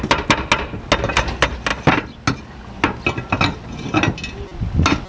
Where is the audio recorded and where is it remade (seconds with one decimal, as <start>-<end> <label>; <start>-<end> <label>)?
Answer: 0.0-5.1 recorded